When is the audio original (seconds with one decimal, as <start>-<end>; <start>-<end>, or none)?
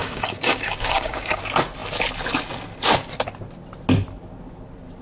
1.4-5.0